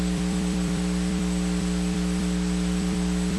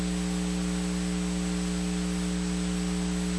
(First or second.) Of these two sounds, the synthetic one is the first